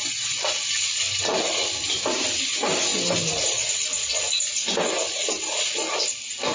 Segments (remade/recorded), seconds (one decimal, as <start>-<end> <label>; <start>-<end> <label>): 0.0-6.5 recorded